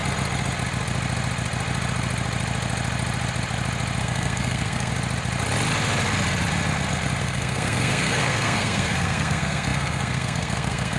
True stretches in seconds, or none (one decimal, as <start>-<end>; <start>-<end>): 0.0-4.0; 4.9-7.2